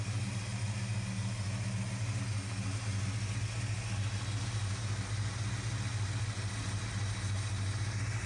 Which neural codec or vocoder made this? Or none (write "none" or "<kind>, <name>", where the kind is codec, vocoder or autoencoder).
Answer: none